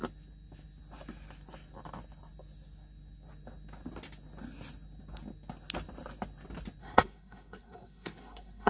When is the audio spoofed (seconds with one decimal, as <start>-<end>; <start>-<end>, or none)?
6.8-8.7